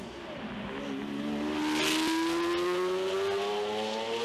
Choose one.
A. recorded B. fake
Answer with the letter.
A